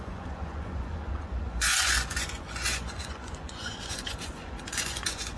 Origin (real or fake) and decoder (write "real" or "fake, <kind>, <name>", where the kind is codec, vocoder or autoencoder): fake, vocoder, Vocos